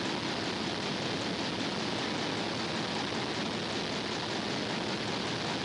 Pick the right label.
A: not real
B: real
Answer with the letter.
B